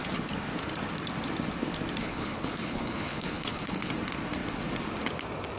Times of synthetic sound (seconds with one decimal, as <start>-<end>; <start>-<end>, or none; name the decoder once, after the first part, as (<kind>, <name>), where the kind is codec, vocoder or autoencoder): 2.0-3.9 (codec, HILCodec)